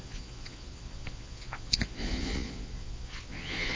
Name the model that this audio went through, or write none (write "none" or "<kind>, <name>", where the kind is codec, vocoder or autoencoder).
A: vocoder, Vocos